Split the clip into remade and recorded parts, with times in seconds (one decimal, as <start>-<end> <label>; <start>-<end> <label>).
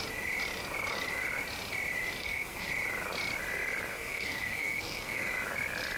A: 0.0-2.2 recorded; 2.2-2.7 remade; 2.7-3.9 recorded; 3.9-5.3 remade; 5.3-6.0 recorded